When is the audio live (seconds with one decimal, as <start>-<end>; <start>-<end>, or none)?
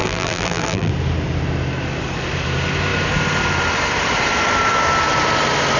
0.9-5.8